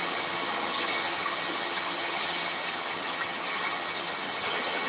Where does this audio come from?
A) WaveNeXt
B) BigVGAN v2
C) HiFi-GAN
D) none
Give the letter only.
C